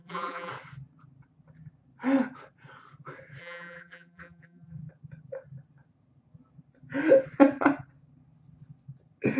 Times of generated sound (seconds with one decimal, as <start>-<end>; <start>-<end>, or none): 0.0-0.5; 3.4-4.8